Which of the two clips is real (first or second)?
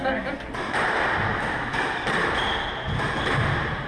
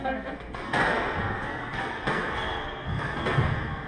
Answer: first